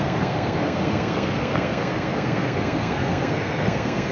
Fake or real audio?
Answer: fake